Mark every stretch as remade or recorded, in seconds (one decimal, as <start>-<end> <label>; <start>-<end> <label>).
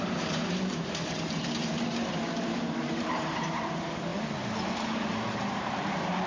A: 0.0-4.1 remade; 4.1-5.1 recorded; 5.1-6.3 remade